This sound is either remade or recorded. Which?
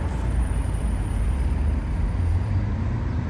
remade